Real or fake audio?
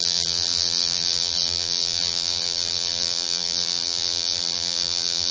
fake